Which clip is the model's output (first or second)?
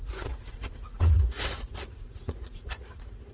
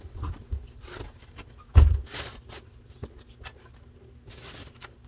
first